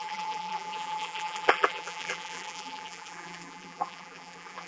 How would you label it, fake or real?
fake